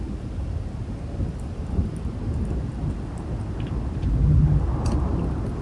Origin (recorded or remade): recorded